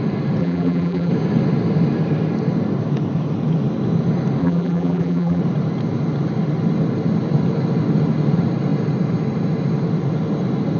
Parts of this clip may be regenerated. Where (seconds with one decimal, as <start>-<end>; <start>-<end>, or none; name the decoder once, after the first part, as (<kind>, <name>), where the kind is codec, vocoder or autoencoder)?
0.4-1.1 (vocoder, BigVGAN v2); 4.4-5.4